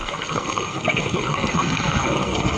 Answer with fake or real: fake